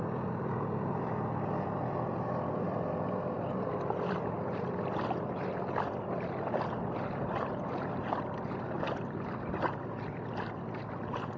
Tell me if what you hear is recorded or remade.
recorded